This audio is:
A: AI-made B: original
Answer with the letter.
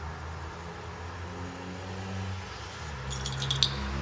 B